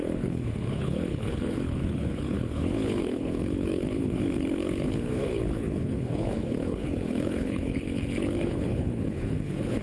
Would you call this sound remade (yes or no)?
yes